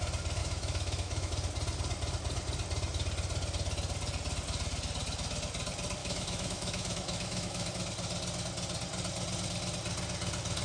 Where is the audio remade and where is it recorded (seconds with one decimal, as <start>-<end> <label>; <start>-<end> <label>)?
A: 0.0-0.4 recorded; 0.4-1.3 remade; 1.3-6.0 recorded; 6.0-7.7 remade; 7.7-10.6 recorded